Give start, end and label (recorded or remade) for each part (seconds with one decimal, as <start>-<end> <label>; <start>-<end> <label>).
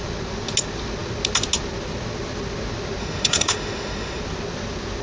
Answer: 0.0-3.0 recorded; 3.0-4.2 remade; 4.2-5.0 recorded